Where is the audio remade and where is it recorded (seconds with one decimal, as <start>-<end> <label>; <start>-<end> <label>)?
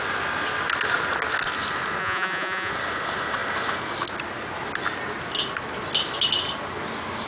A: 0.0-2.0 recorded; 2.0-2.7 remade; 2.7-7.3 recorded